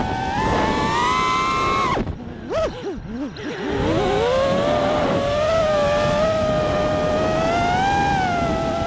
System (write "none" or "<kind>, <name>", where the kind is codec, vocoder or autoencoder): none